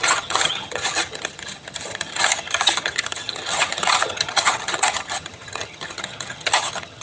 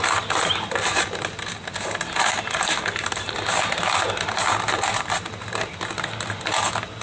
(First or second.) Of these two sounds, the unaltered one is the second